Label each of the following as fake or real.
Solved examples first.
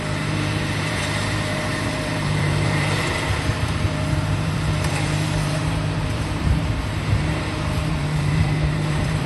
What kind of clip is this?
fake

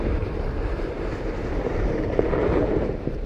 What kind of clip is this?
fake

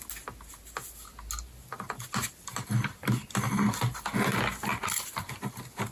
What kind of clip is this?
real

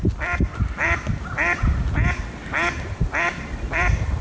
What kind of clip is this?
fake